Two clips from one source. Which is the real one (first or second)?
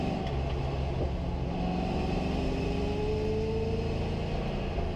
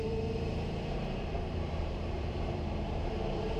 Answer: first